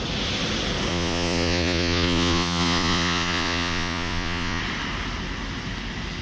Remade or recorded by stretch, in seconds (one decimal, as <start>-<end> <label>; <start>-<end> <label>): 0.0-0.9 recorded; 0.9-4.6 remade; 4.6-6.2 recorded